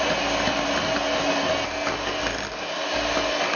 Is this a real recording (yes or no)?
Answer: yes